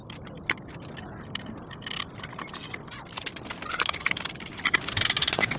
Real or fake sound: real